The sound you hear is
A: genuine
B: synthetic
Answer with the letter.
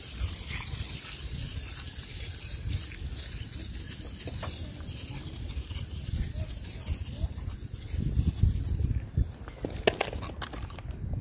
A